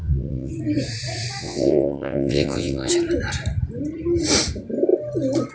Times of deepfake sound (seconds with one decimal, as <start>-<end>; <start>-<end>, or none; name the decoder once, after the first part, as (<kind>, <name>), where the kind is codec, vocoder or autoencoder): 0.0-0.5 (vocoder, WaveNeXt); 1.4-2.9